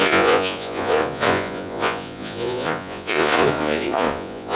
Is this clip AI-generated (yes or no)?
yes